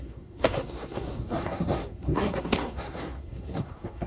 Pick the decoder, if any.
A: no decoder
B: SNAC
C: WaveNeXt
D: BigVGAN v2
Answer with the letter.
B